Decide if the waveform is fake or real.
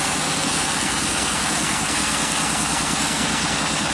fake